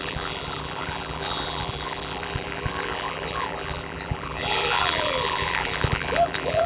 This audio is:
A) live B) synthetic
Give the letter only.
B